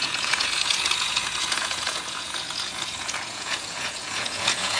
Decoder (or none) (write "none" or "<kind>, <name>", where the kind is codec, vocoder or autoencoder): vocoder, Vocos